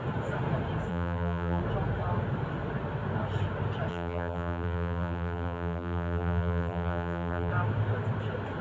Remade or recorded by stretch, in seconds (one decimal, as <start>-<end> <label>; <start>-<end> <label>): 0.0-0.9 recorded; 0.9-1.6 remade; 1.6-3.9 recorded; 3.9-7.5 remade; 7.5-8.6 recorded